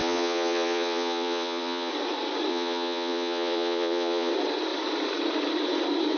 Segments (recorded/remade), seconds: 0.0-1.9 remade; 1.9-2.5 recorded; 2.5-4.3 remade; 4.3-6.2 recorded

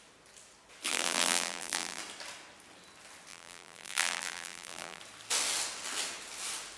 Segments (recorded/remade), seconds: 0.0-0.9 recorded; 0.9-2.0 remade; 2.0-3.3 recorded; 3.3-5.0 remade; 5.0-6.8 recorded

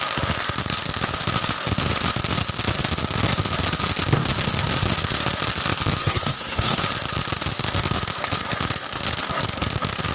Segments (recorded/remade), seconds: 0.0-6.0 recorded; 6.0-6.8 remade; 6.8-10.1 recorded

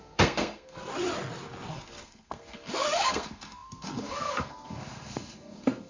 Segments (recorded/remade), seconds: 0.0-0.9 remade; 0.9-1.7 recorded; 1.7-5.9 remade

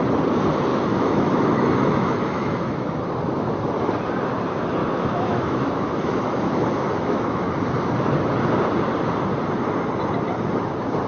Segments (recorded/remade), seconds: 0.0-0.7 recorded; 0.7-3.0 remade; 3.0-4.8 recorded; 4.8-7.5 remade; 7.5-11.1 recorded

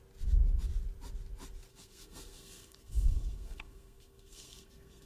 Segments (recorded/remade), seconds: 0.0-1.7 recorded; 1.7-5.1 remade

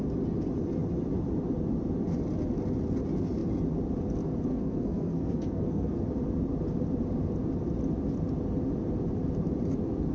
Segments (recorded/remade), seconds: 0.0-4.5 recorded; 4.5-6.0 remade; 6.0-10.1 recorded

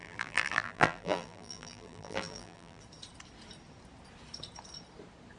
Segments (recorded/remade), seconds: 0.0-2.8 remade; 2.8-5.4 recorded